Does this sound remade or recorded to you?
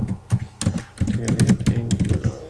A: recorded